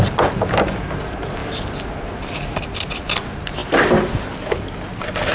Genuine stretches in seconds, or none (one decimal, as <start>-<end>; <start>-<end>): 0.0-5.3